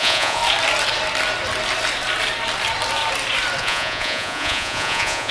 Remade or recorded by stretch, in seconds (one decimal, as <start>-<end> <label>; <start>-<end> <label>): 0.0-0.4 remade; 0.4-3.6 recorded; 3.6-5.3 remade